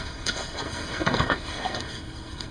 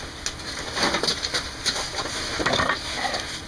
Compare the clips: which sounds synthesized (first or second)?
first